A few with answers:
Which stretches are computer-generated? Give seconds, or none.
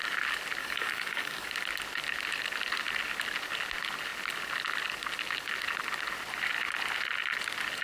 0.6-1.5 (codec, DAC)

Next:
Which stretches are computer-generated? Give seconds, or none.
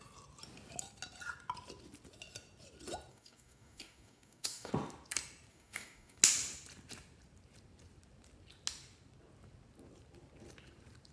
3.1-4.7 (codec, DAC); 5.5-6.2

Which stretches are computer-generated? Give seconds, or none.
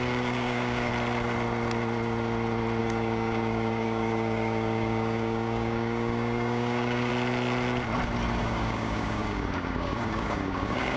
0.0-0.9 (codec, DAC); 2.8-7.1; 8.4-11.0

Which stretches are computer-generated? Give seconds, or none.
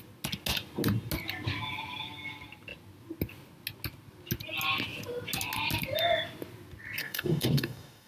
7.0-8.1 (codec, DAC)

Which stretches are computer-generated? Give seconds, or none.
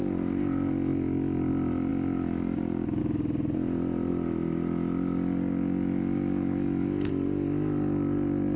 none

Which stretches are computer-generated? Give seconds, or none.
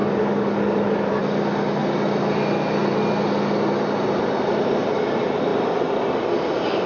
0.0-1.1 (codec, DAC)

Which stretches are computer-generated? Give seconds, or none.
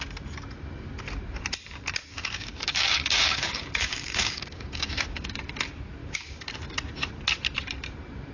2.1-5.3 (codec, DAC); 6.0-6.5